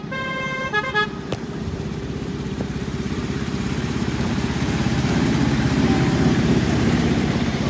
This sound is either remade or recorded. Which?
remade